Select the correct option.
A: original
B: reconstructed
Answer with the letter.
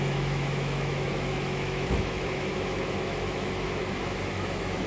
B